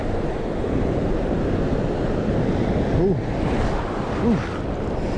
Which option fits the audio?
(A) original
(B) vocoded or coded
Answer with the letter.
A